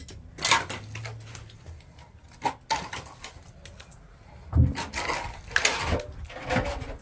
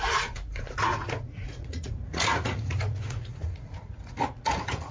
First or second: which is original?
first